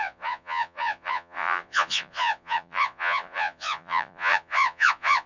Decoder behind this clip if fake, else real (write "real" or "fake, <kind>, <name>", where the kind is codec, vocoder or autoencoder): fake, vocoder, Vocos